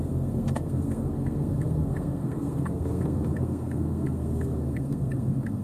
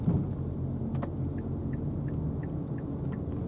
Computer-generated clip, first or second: first